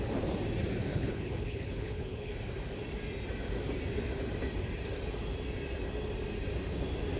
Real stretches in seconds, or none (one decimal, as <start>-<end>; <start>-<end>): 0.0-0.9; 2.3-7.2

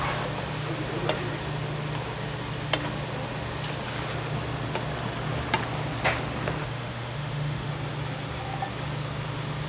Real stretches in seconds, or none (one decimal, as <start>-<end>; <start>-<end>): 0.0-6.6; 7.7-9.7

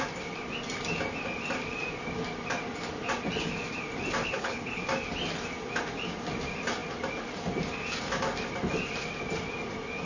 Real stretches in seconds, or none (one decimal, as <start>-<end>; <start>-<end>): 0.0-4.2; 4.8-10.1

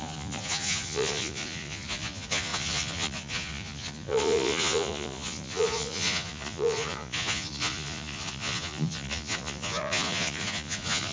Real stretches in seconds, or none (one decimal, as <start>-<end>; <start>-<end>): none

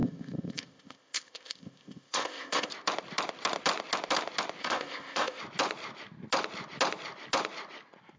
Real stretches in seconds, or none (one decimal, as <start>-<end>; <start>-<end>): 2.7-4.6; 5.4-8.2

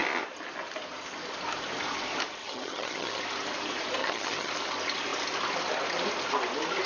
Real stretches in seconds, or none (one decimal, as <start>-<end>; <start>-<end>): 0.0-2.4; 3.2-4.0; 4.5-6.9

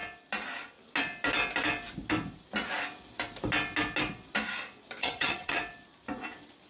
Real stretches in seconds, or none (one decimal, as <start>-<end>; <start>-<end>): 0.0-5.0; 5.6-6.7